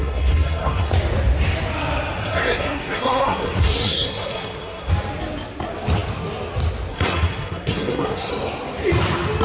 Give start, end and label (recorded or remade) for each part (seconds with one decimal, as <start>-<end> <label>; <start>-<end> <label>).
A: 0.0-0.9 remade; 0.9-2.2 recorded; 2.2-4.9 remade; 4.9-6.9 recorded; 6.9-8.3 remade; 8.3-9.4 recorded